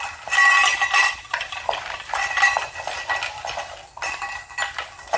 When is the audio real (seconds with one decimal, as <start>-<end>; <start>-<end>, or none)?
0.0-0.7; 2.2-5.2